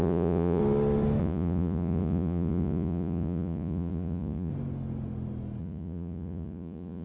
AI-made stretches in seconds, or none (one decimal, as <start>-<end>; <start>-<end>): 0.0-0.6; 1.2-4.5; 5.6-7.0